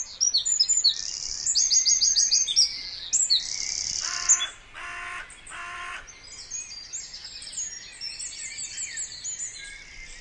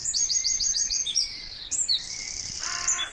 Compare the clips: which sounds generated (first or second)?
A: second